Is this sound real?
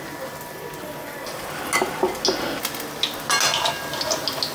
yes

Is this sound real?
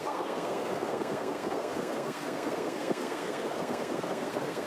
no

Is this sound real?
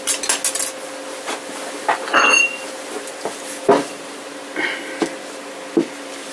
yes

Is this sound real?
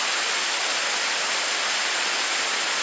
yes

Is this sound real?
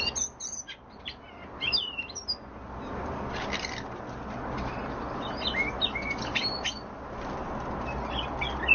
yes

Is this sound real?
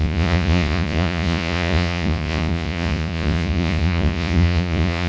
no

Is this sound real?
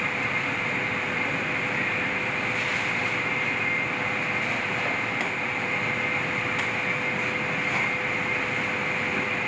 yes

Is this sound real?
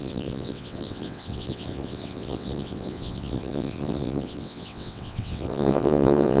no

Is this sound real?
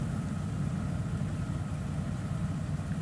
yes